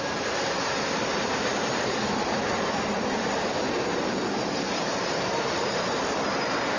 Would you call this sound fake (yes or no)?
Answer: yes